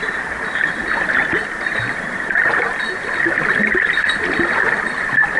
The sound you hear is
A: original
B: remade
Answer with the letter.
A